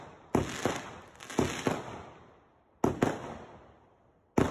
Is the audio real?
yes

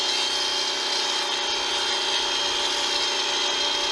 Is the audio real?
yes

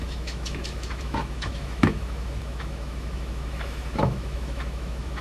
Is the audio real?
no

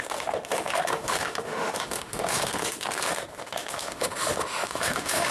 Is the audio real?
no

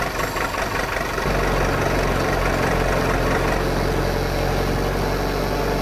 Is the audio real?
yes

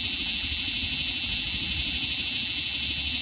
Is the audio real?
yes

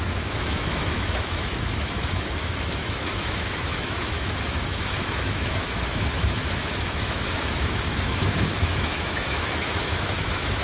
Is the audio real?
no